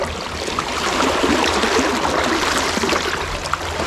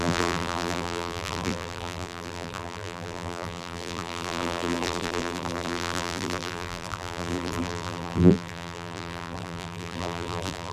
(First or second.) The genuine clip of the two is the first